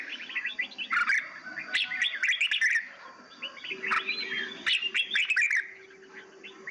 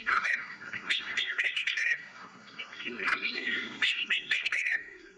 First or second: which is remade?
second